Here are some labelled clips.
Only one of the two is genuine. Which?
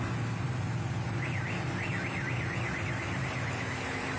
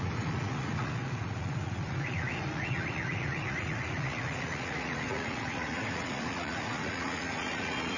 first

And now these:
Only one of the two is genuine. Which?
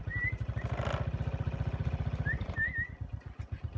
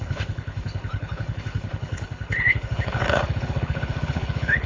first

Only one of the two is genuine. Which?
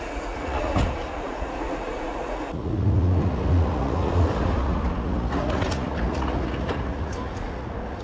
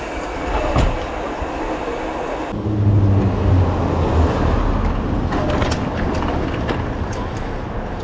second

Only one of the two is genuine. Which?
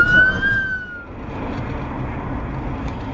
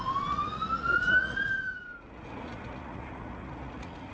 first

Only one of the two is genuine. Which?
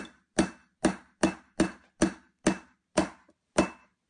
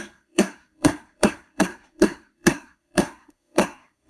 first